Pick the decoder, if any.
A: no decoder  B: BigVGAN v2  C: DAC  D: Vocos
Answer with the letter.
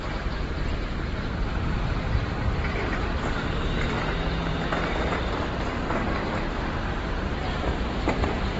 B